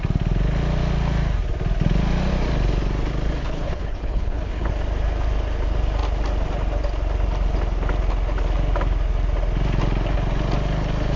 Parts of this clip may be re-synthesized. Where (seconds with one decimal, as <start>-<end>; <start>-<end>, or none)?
3.4-4.7